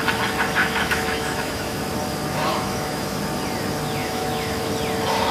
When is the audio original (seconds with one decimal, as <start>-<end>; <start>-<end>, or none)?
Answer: 0.0-0.6; 1.8-2.5; 3.2-4.0; 4.7-5.3